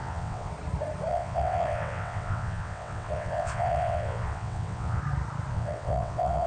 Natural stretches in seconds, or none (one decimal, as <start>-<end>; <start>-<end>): 0.5-1.1; 5.0-5.5